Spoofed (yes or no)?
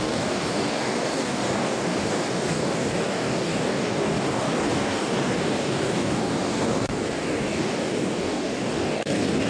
yes